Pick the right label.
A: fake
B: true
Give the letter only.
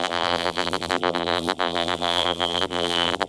A